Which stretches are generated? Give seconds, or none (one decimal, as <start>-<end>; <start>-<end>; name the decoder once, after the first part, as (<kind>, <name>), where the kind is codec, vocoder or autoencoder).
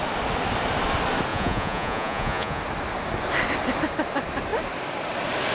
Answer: 1.3-2.6 (vocoder, Vocos)